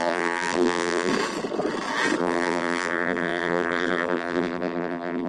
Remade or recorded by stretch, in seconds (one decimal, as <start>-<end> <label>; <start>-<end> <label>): 0.0-1.1 remade; 1.1-2.2 recorded; 2.2-5.3 remade